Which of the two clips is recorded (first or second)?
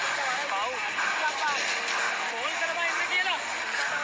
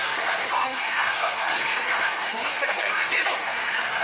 first